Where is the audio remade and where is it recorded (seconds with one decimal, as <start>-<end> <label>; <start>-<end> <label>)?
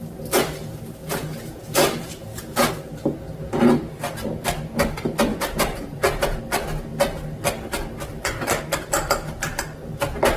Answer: 0.0-1.0 recorded; 1.0-2.7 remade; 2.7-5.3 recorded; 5.3-6.4 remade; 6.4-10.4 recorded